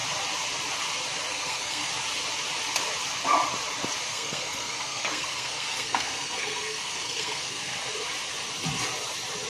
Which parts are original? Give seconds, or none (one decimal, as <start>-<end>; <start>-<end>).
0.0-1.3; 1.9-4.1; 7.8-9.5